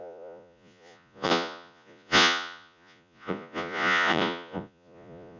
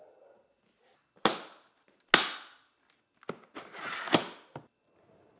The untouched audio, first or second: second